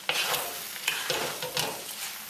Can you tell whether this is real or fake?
real